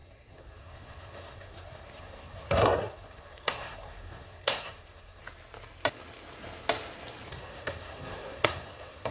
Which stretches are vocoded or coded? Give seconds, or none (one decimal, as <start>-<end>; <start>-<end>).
0.0-5.2; 7.3-9.1